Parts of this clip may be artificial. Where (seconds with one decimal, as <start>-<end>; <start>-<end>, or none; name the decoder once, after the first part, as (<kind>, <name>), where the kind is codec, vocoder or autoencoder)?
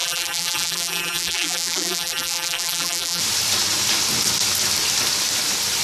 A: 0.0-3.2 (vocoder, BigVGAN v2)